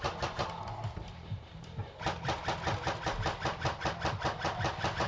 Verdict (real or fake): fake